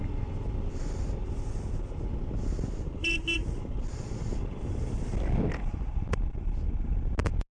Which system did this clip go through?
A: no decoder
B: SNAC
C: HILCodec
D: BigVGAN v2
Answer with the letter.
A